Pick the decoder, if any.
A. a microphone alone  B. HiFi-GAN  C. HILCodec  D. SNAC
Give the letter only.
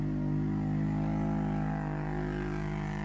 A